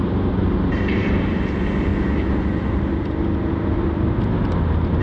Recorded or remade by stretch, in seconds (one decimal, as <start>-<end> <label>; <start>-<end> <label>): 0.0-1.9 remade; 1.9-5.0 recorded